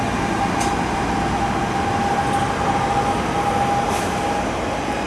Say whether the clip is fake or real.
real